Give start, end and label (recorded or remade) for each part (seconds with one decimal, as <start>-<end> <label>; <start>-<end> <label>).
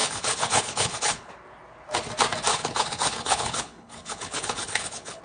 0.0-1.3 remade; 1.3-2.5 recorded; 2.5-5.2 remade